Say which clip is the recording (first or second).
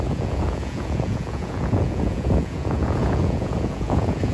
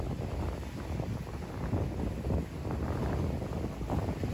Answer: second